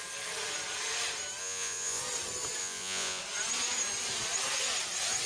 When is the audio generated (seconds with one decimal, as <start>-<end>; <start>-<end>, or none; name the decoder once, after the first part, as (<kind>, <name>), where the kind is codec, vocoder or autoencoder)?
1.4-2.0 (vocoder, Vocos); 2.6-3.2